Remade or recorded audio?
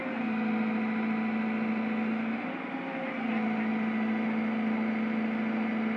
recorded